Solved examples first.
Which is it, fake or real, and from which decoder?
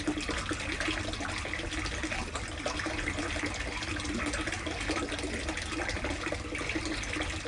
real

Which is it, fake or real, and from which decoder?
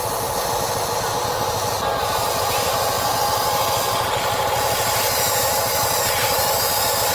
real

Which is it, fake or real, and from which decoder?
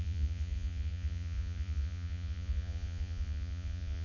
fake, vocoder, Vocos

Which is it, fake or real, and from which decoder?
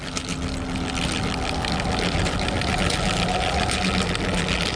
real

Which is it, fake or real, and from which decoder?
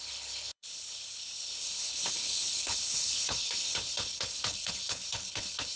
fake, codec, HILCodec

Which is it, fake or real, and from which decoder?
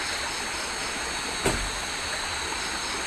real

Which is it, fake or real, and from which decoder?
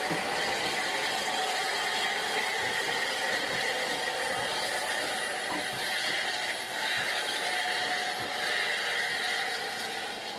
real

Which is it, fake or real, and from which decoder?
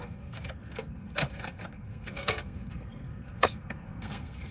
fake, codec, SNAC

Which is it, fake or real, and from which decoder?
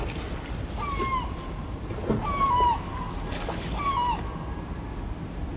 real